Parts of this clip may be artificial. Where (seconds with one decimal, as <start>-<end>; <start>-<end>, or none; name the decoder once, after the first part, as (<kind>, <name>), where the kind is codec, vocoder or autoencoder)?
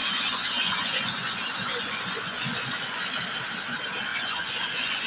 0.0-3.1 (vocoder, Vocos); 4.1-5.1